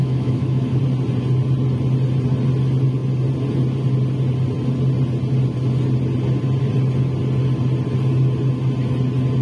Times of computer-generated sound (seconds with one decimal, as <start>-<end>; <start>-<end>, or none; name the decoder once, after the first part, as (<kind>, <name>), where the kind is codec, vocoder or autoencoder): 0.0-0.8 (autoencoder, DAC-VAE)